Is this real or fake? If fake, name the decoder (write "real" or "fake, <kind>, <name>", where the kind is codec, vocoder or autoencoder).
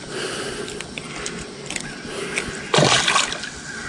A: real